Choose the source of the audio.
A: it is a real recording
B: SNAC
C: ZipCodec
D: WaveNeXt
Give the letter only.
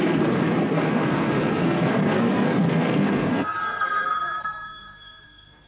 B